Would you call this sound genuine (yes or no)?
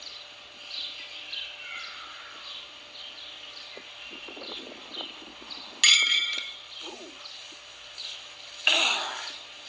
yes